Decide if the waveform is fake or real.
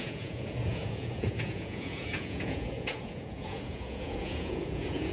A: fake